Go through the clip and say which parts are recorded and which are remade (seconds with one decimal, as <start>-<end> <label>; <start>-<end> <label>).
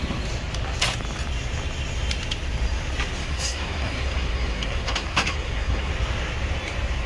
0.0-3.2 recorded; 3.2-5.9 remade; 5.9-7.1 recorded